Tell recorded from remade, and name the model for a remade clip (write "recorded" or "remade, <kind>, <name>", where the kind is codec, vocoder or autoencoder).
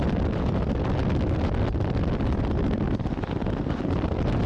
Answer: recorded